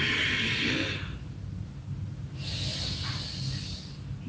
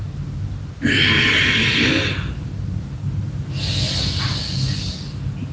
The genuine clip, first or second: second